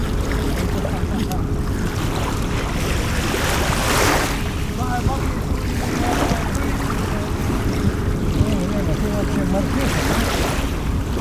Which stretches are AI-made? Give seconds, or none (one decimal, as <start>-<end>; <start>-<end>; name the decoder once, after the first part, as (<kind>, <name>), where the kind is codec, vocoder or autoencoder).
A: 0.0-1.3 (vocoder, BigVGAN v2); 7.4-8.4